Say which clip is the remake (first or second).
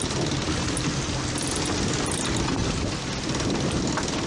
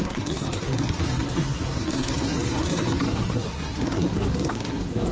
second